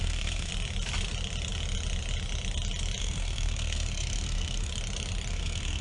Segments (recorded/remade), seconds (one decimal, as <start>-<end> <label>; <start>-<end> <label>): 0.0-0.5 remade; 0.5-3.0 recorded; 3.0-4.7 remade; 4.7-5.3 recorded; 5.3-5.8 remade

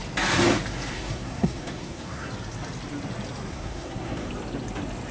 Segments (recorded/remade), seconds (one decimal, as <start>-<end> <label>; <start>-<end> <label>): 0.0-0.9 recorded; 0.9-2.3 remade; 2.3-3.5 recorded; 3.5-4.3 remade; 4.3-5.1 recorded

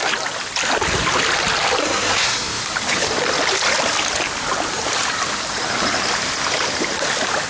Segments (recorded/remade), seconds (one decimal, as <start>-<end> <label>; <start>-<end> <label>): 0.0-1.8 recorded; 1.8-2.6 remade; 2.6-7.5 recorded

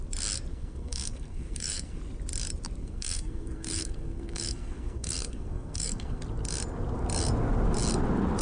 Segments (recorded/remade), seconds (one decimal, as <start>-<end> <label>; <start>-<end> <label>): 0.0-0.5 recorded; 0.5-2.0 remade; 2.0-2.8 recorded; 2.8-6.2 remade; 6.2-8.4 recorded